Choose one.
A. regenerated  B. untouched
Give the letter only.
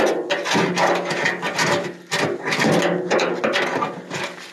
B